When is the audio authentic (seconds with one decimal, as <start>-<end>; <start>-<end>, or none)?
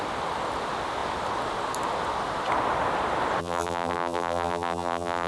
0.0-3.4